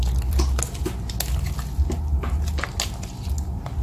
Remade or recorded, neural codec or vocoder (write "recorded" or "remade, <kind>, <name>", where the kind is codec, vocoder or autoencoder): recorded